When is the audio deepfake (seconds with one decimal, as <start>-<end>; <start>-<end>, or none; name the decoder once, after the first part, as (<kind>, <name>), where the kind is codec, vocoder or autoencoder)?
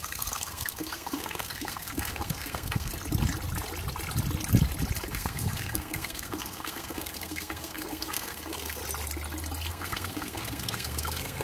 0.0-2.9 (codec, SNAC); 5.1-8.8; 9.7-11.4